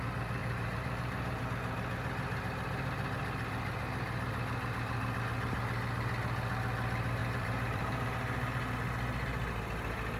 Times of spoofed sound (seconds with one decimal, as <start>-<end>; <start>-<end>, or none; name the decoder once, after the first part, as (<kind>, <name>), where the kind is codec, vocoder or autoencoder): 0.4-1.4 (vocoder, BigVGAN v2); 7.2-8.7